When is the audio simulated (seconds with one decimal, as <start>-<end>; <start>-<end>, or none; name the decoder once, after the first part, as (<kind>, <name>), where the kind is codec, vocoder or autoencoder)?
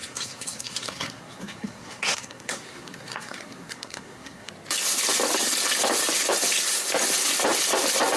0.0-4.5 (codec, SNAC)